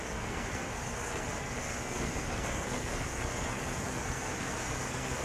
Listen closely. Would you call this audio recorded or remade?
remade